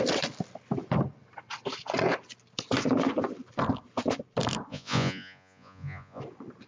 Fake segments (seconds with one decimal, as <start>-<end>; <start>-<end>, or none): 4.7-6.2